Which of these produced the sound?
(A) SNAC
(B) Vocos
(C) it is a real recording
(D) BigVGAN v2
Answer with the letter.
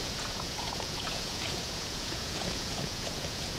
B